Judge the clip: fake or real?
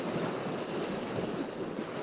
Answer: fake